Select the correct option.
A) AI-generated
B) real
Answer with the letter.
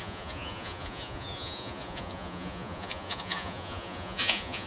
A